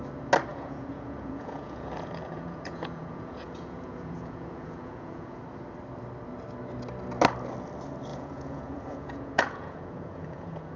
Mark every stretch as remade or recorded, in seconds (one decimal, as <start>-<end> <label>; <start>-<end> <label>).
0.0-0.5 recorded; 0.5-5.4 remade; 5.4-8.1 recorded; 8.1-10.8 remade